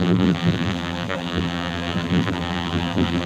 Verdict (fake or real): fake